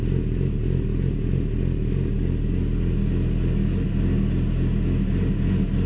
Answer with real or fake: real